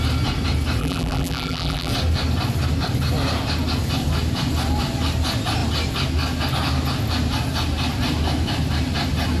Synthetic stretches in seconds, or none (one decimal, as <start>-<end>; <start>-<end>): 0.8-1.9